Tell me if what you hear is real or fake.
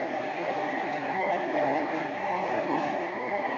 fake